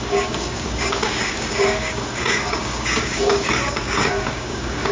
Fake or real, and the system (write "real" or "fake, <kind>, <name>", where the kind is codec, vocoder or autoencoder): fake, codec, DAC